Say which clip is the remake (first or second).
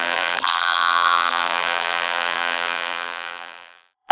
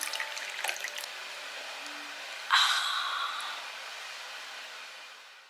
first